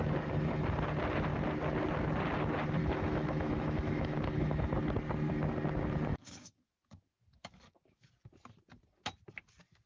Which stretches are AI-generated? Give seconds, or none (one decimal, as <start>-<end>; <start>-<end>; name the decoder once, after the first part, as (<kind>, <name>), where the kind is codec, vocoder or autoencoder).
2.8-4.7 (autoencoder, DAC-VAE); 6.1-8.1